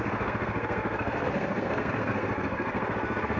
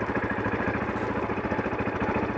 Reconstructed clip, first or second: first